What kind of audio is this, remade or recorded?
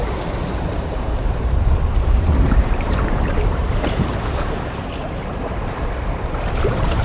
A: remade